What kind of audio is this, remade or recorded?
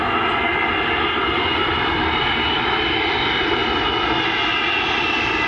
recorded